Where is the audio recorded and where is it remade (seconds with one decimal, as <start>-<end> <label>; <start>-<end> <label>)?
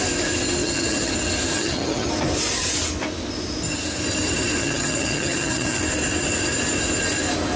0.0-0.6 recorded; 0.6-1.1 remade; 1.1-1.5 recorded; 1.5-2.1 remade; 2.1-4.6 recorded; 4.6-5.8 remade; 5.8-7.6 recorded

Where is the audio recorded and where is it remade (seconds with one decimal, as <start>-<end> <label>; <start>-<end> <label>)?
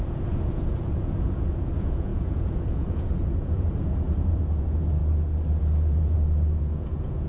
0.0-5.0 remade; 5.0-5.6 recorded; 5.6-7.3 remade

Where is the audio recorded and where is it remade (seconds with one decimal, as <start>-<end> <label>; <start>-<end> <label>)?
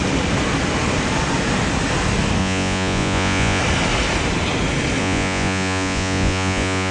0.0-2.4 recorded; 2.4-3.6 remade; 3.6-5.0 recorded; 5.0-6.9 remade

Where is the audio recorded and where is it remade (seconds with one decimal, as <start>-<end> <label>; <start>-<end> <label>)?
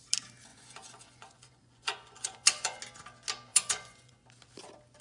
0.0-0.5 recorded; 0.5-2.8 remade; 2.8-3.5 recorded; 3.5-4.2 remade; 4.2-5.0 recorded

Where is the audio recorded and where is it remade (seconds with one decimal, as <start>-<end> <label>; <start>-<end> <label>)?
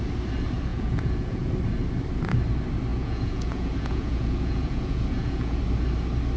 0.0-0.7 recorded; 0.7-1.5 remade; 1.5-2.9 recorded; 2.9-5.6 remade; 5.6-6.4 recorded